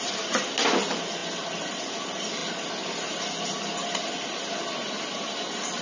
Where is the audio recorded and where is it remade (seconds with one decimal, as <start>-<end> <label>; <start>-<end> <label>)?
0.0-5.8 recorded